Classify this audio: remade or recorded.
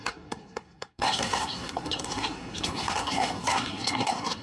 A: remade